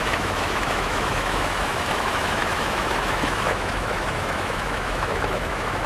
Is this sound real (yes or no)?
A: no